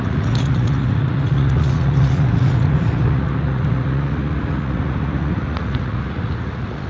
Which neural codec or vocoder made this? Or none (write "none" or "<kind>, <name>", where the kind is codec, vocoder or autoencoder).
vocoder, Vocos